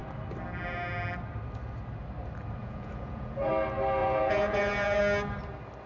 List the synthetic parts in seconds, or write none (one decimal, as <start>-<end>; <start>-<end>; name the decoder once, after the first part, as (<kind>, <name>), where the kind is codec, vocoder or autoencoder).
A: 2.6-3.5 (vocoder, Vocos); 4.0-5.0

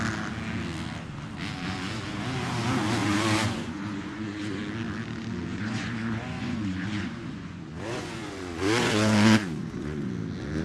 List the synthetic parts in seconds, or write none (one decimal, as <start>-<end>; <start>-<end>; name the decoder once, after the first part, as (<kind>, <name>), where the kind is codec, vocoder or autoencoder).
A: 3.0-4.6 (vocoder, Vocos); 5.5-10.1

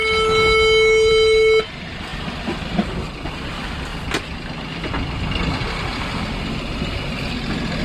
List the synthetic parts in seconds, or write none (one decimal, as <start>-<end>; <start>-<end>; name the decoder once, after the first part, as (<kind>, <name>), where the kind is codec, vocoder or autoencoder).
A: none

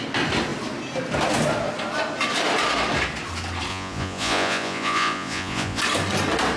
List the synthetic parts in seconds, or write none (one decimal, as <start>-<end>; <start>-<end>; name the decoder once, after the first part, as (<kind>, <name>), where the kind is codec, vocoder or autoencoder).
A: 3.7-5.8 (vocoder, Vocos)

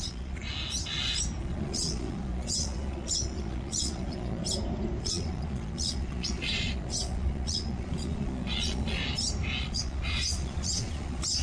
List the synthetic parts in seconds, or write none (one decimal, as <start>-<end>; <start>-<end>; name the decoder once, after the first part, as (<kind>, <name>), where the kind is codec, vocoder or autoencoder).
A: 0.0-0.4 (vocoder, Vocos); 1.4-4.4; 5.0-9.0; 9.6-11.4

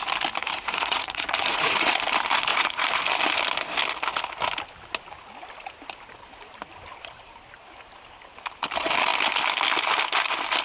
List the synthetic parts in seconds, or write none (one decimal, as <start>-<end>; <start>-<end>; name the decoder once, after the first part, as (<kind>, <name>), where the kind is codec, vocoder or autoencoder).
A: 0.4-1.9 (vocoder, Vocos); 2.5-3.0

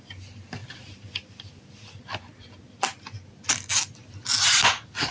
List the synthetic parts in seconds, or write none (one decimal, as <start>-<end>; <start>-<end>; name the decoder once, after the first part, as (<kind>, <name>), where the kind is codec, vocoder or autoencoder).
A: none